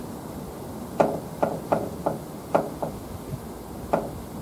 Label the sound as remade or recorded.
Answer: recorded